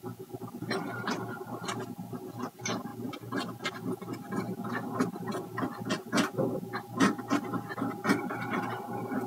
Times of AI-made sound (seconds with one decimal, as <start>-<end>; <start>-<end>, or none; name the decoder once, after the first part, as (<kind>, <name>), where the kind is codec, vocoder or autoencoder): none